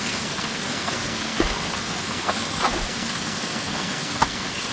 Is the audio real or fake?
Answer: fake